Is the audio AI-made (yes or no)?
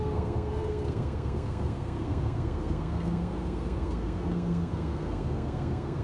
yes